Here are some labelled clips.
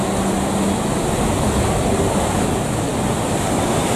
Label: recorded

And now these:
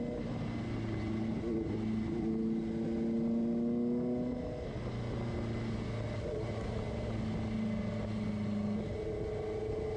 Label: recorded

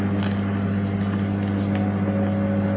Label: recorded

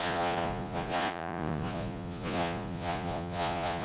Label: remade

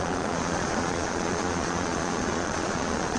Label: remade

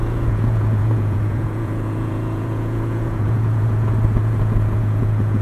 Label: remade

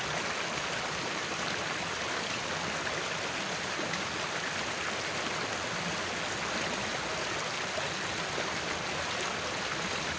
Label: recorded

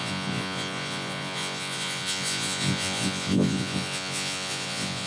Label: remade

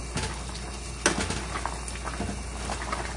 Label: recorded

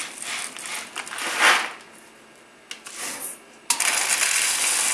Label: recorded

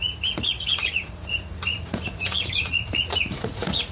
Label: remade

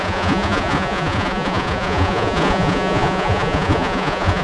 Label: remade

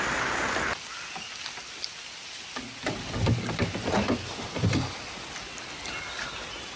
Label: recorded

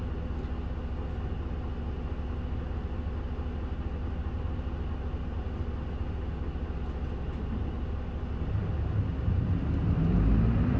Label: recorded